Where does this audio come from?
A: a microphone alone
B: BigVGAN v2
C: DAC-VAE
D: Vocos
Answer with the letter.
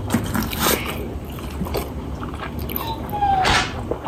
A